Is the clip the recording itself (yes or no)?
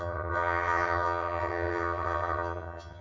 no